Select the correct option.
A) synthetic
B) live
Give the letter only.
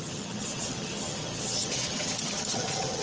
A